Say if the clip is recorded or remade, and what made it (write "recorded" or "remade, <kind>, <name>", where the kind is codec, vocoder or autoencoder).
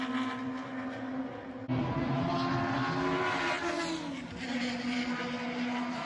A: recorded